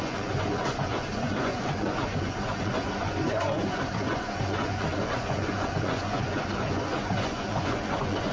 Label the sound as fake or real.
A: fake